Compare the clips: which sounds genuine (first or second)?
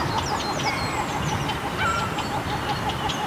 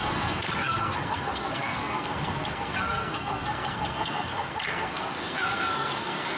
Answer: first